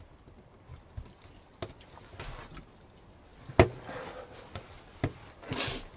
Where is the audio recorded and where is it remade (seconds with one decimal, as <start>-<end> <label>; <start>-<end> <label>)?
0.0-6.0 recorded